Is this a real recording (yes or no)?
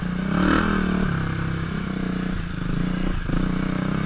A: yes